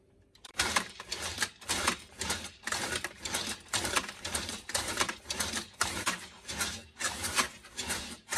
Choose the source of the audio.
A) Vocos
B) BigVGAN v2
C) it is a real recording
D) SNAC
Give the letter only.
B